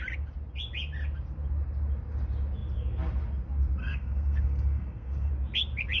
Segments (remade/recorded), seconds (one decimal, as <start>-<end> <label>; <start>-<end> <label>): 0.0-3.8 recorded; 3.8-5.3 remade; 5.3-6.0 recorded